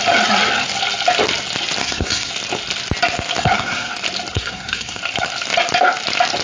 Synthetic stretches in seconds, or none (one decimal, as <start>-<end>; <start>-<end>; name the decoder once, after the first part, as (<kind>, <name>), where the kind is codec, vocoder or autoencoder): 1.8-2.3 (codec, SNAC); 3.4-3.9; 4.3-5.0